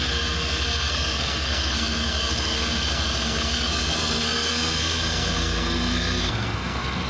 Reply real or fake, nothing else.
fake